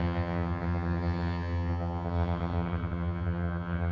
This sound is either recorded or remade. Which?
remade